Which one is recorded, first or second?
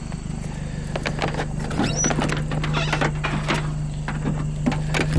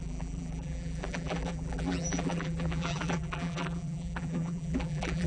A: first